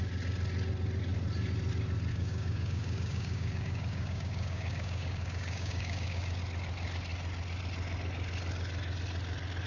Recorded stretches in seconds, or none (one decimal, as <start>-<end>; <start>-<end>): 0.0-2.1; 6.4-9.7